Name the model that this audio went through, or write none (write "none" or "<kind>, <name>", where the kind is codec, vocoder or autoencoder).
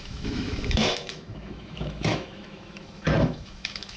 autoencoder, DAC-VAE